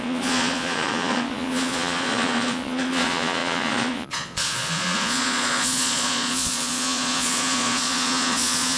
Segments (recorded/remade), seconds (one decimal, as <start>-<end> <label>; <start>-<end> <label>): 0.0-8.8 remade